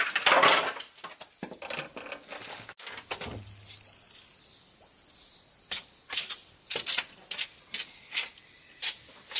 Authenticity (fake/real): real